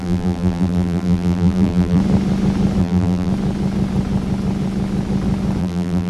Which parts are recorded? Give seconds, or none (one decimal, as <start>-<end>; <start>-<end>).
2.0-2.8; 3.3-5.6